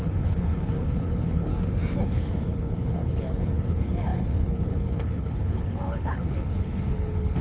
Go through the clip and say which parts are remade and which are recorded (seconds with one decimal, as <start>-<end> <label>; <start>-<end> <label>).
0.0-1.5 remade; 1.5-2.0 recorded; 2.0-7.4 remade